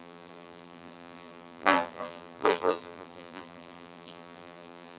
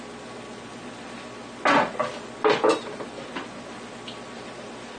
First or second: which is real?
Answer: second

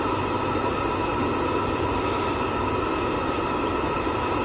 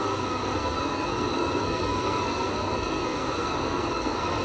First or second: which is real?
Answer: first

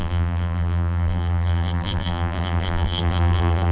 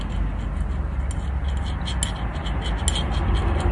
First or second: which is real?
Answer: second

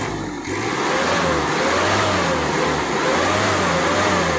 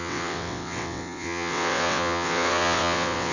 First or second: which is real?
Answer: first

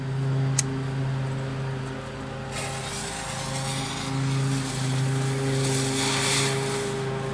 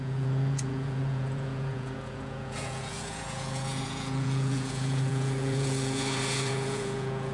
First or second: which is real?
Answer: first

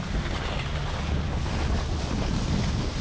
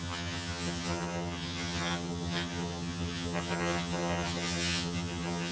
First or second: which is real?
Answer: first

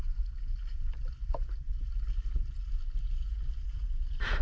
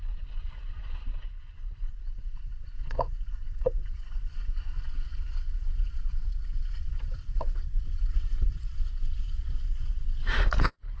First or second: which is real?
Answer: first